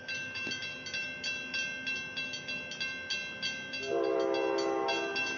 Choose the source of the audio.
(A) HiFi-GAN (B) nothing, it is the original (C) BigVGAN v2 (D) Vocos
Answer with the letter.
B